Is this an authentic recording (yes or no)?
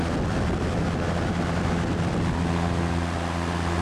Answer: yes